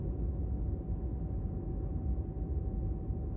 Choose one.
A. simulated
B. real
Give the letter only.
B